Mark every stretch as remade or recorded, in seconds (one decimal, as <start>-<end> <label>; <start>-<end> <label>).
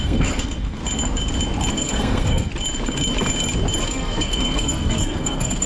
0.0-0.8 remade; 0.8-1.7 recorded; 1.7-2.5 remade; 2.5-3.8 recorded; 3.8-5.7 remade